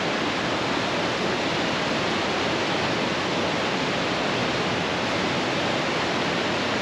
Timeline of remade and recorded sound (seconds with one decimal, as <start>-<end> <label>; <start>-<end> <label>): 0.0-6.8 recorded